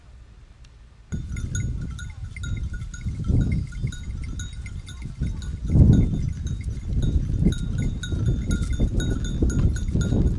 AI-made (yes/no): no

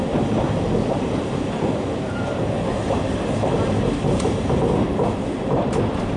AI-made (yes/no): no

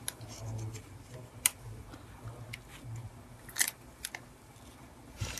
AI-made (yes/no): no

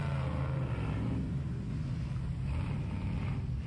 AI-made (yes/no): no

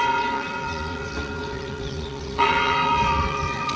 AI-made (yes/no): yes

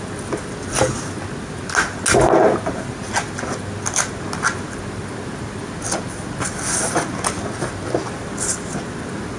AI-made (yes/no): no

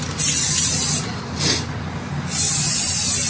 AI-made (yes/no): no